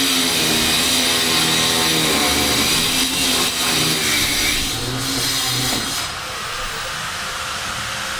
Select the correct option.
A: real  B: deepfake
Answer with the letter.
A